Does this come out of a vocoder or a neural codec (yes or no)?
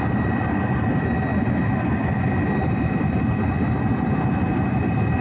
no